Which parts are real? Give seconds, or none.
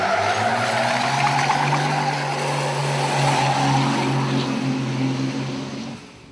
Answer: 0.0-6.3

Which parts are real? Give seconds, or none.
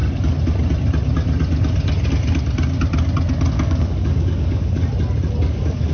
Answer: 0.0-3.5; 4.8-5.4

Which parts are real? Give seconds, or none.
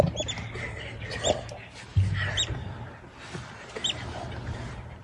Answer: 0.0-5.0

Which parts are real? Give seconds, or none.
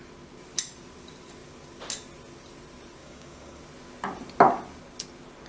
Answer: 0.0-3.0; 3.6-5.5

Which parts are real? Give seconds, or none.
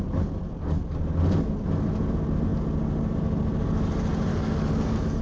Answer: 0.0-4.3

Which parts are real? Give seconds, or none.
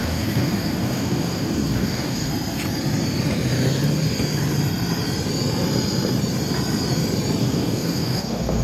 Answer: 2.3-7.4